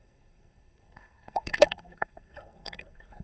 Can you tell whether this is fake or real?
fake